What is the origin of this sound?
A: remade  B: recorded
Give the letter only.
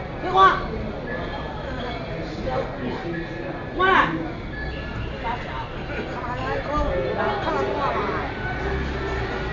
B